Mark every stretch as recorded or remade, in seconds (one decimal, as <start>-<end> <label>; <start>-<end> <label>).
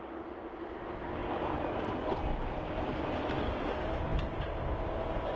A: 0.0-5.4 recorded